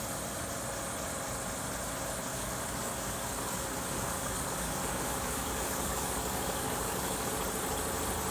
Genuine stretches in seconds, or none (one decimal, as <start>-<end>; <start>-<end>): 0.0-2.3; 7.3-8.3